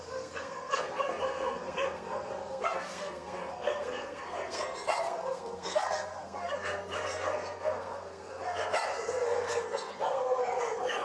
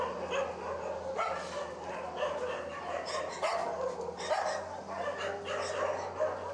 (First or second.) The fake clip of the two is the first